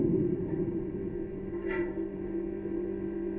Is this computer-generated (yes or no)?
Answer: yes